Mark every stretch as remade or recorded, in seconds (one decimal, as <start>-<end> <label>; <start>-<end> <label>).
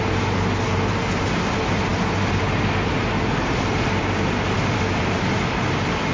0.0-6.1 recorded